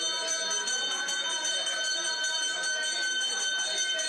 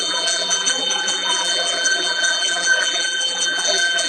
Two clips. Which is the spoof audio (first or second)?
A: second